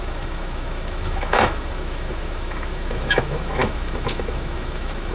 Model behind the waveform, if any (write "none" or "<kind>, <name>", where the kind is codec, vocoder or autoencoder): autoencoder, DAC-VAE